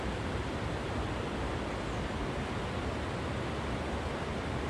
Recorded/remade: recorded